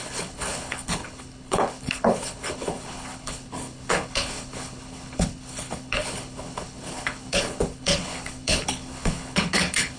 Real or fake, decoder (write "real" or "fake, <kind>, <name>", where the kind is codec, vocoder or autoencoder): fake, codec, HILCodec